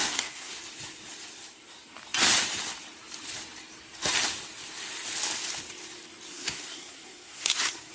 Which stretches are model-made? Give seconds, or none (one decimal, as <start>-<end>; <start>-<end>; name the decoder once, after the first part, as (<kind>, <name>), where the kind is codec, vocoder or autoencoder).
0.0-0.5 (codec, SNAC); 6.3-7.9